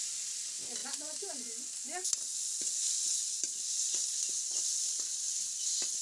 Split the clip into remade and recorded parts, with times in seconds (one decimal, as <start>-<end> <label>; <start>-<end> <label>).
0.0-6.0 recorded